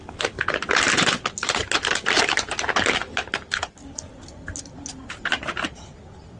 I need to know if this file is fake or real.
real